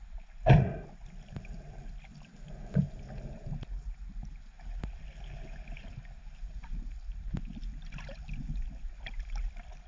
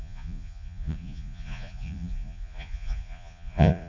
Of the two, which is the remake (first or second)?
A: second